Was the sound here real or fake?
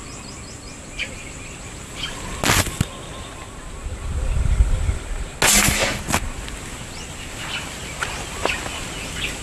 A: real